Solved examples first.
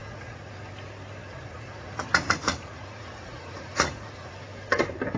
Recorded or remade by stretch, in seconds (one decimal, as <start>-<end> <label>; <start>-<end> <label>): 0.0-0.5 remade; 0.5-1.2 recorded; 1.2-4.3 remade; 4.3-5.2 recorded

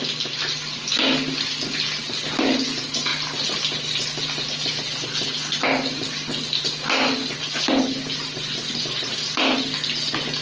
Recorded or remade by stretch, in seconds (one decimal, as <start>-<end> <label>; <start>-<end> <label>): 0.0-10.4 recorded

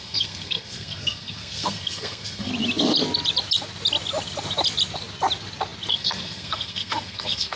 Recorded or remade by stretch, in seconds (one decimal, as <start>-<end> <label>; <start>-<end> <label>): 0.0-2.5 remade; 2.5-5.9 recorded; 5.9-7.6 remade